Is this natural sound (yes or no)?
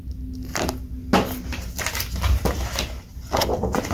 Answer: yes